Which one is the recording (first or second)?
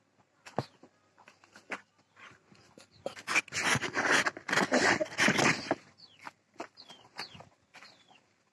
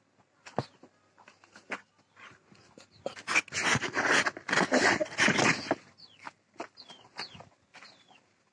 second